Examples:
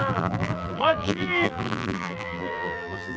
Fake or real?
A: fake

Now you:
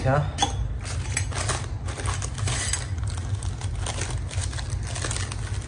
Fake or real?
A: real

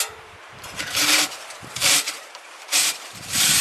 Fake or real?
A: fake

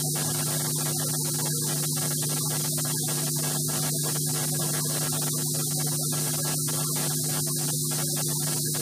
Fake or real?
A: real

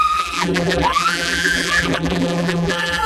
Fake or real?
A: fake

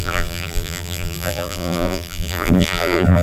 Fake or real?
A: fake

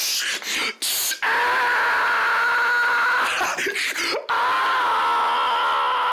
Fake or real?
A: real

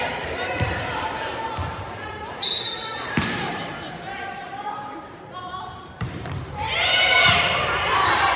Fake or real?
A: fake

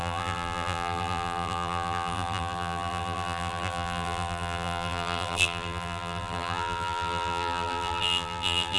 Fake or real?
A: fake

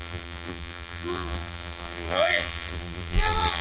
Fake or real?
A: fake